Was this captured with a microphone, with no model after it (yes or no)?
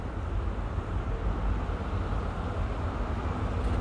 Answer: yes